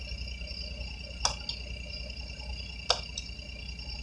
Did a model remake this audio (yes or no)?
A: no